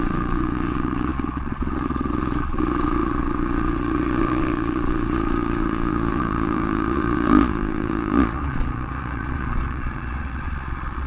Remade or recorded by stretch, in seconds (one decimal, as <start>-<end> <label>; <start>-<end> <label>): 0.0-11.1 remade